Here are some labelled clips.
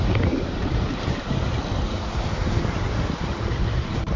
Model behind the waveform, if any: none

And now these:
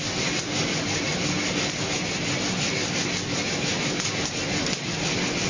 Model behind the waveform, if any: none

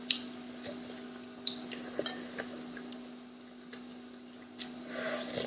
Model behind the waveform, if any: none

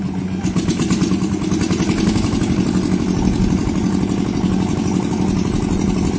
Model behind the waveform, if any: none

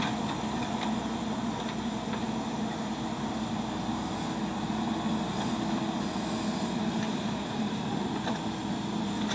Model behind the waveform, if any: none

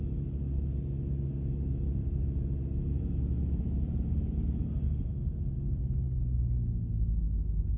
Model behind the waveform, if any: none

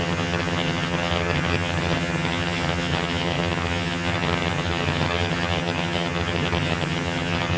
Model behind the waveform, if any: vocoder, HiFi-GAN